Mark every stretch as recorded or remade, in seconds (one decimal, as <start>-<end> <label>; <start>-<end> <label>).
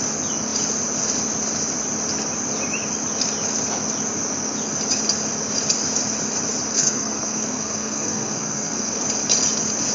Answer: 0.0-6.7 recorded; 6.7-8.9 remade; 8.9-9.9 recorded